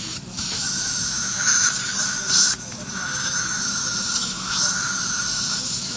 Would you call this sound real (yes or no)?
no